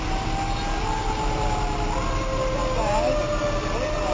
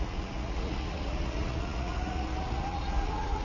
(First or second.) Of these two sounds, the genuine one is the first